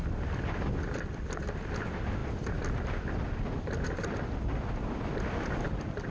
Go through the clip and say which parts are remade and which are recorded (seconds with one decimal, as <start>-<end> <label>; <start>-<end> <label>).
0.0-6.1 recorded